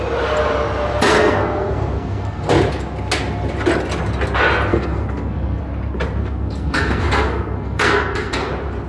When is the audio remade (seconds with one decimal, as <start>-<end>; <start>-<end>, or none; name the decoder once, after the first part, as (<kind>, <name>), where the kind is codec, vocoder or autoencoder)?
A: 1.1-2.4 (codec, SNAC); 4.7-5.6; 6.2-8.5